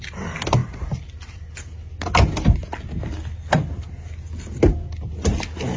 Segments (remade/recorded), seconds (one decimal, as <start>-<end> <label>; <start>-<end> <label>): 0.0-0.6 recorded; 0.6-1.5 remade; 1.5-5.8 recorded